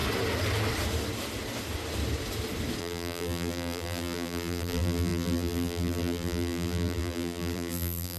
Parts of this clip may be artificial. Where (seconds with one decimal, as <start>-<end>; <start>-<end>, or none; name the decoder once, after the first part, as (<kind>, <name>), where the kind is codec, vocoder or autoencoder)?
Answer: 2.8-8.2 (vocoder, BigVGAN v2)